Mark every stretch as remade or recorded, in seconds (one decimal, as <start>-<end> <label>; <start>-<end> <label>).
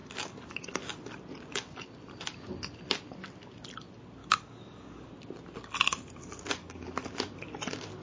0.0-0.8 remade; 0.8-4.2 recorded; 4.2-5.1 remade; 5.1-6.6 recorded; 6.6-7.1 remade; 7.1-8.0 recorded